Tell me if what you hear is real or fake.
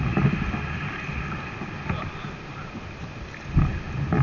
real